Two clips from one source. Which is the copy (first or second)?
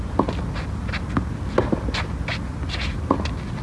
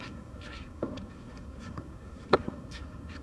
second